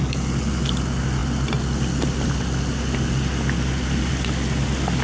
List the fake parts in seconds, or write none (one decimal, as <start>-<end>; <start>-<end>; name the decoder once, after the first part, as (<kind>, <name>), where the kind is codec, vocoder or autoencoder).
none